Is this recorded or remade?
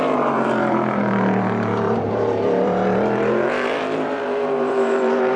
remade